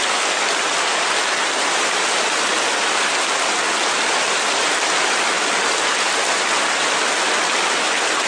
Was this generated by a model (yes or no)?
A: no